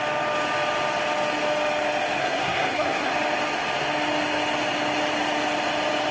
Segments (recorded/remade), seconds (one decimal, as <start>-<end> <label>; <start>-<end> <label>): 0.0-2.2 recorded; 2.2-3.1 remade; 3.1-6.1 recorded